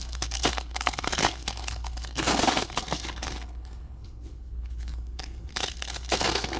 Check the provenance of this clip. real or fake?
fake